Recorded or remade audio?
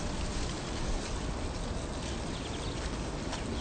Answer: recorded